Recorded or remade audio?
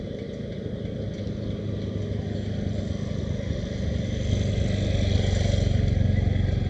recorded